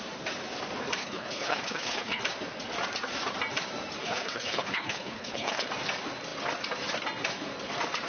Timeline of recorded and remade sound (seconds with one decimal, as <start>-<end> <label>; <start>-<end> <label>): 0.0-1.0 recorded; 1.0-2.2 remade; 2.2-4.0 recorded; 4.0-5.7 remade; 5.7-8.1 recorded